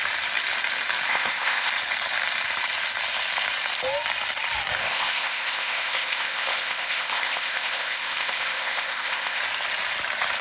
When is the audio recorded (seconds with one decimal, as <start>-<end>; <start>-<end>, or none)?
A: 0.0-1.1; 1.7-4.8; 9.4-10.4